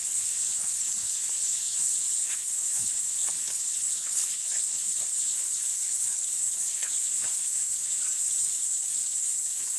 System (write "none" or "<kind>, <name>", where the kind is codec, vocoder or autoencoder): codec, HILCodec